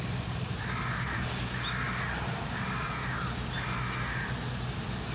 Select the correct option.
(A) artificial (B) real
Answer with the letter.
B